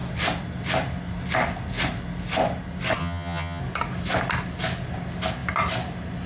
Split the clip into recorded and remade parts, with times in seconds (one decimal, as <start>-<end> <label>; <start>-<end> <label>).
0.0-3.0 recorded; 3.0-3.6 remade; 3.6-6.3 recorded